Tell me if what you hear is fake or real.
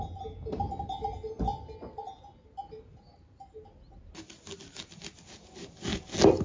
real